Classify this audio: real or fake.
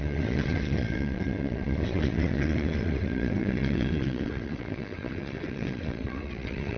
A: fake